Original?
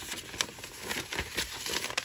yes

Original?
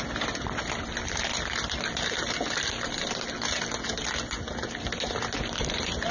yes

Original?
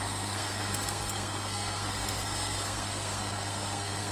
no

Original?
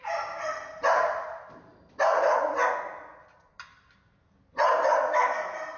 yes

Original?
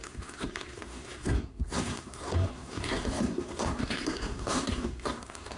no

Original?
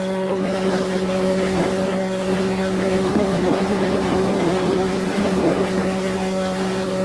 no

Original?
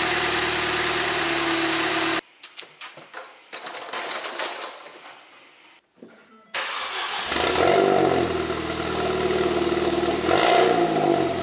yes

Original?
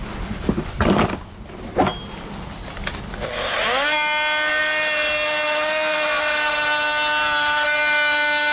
yes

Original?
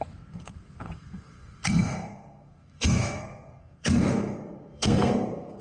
no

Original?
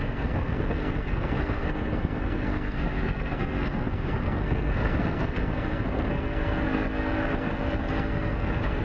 no